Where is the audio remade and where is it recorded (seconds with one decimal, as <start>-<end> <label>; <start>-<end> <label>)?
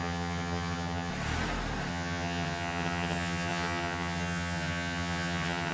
0.0-1.1 remade; 1.1-1.9 recorded; 1.9-5.7 remade